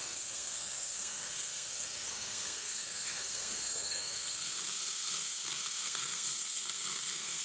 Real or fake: fake